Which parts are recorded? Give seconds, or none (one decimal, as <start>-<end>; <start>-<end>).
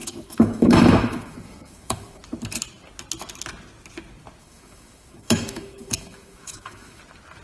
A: 2.2-4.4; 7.0-7.4